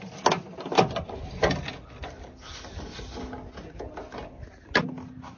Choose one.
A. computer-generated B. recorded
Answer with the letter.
B